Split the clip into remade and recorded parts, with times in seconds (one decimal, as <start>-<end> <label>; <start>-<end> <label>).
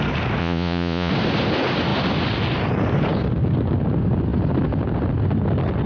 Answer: 0.0-0.4 recorded; 0.4-1.1 remade; 1.1-5.9 recorded